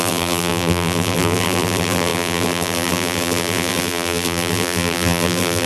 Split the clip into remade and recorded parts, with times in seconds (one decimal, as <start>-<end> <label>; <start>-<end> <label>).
0.0-5.7 remade